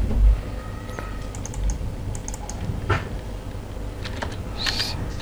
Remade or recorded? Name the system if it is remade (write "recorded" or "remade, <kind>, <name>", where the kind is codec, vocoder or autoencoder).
recorded